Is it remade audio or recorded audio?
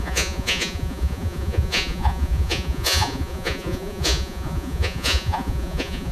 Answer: remade